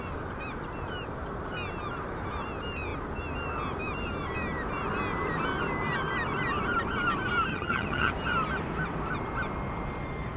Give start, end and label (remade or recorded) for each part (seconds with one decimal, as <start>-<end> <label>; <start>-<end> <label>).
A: 0.0-7.5 recorded; 7.5-8.1 remade; 8.1-10.4 recorded